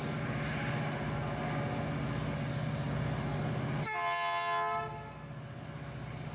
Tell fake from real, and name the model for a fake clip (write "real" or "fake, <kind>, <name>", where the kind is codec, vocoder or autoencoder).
real